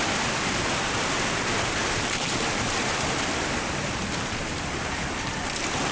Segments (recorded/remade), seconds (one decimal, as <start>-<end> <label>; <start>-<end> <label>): 0.0-5.9 recorded

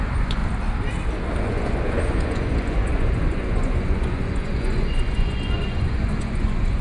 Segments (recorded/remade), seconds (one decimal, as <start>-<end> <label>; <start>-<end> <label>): 0.0-0.4 remade; 0.4-1.4 recorded; 1.4-6.8 remade

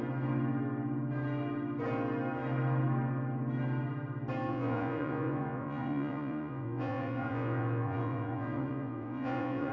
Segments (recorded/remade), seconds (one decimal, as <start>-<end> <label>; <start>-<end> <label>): 0.0-4.5 recorded; 4.5-9.7 remade

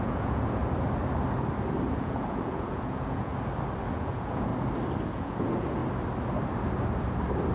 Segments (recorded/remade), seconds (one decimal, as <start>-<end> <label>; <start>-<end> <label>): 0.0-0.6 remade; 0.6-1.9 recorded; 1.9-3.3 remade; 3.3-3.9 recorded; 3.9-4.5 remade; 4.5-5.1 recorded; 5.1-5.8 remade; 5.8-7.5 recorded

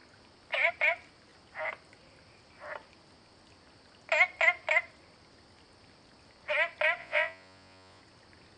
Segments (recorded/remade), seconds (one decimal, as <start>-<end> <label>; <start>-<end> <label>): 0.0-7.0 recorded; 7.0-8.0 remade; 8.0-8.6 recorded